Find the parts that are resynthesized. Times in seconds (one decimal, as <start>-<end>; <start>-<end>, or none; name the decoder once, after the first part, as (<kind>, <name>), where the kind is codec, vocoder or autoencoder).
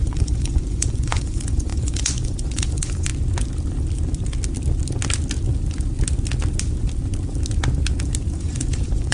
0.0-3.1 (vocoder, Vocos); 8.3-9.1